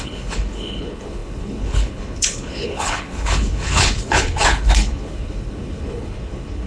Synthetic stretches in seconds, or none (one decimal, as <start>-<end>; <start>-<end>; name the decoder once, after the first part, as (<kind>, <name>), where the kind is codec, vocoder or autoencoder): 0.0-6.7 (codec, HILCodec)